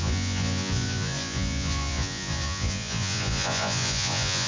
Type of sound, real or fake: fake